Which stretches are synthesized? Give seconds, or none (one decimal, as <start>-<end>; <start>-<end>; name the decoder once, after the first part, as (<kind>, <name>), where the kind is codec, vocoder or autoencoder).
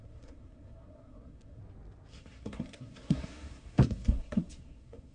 0.0-1.6 (codec, SNAC); 2.1-5.1